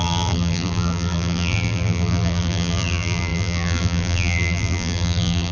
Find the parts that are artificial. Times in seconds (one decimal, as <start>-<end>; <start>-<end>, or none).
0.0-5.5